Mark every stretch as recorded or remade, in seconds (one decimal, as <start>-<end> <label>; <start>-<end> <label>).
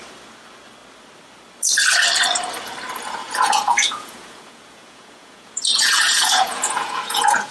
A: 0.0-3.2 recorded; 3.2-7.5 remade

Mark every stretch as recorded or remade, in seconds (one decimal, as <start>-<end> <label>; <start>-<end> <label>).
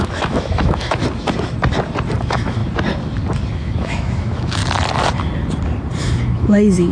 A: 0.0-1.0 remade; 1.0-2.2 recorded; 2.2-2.6 remade; 2.6-3.5 recorded; 3.5-4.6 remade; 4.6-6.0 recorded; 6.0-6.9 remade